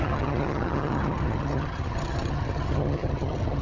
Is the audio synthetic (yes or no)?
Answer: yes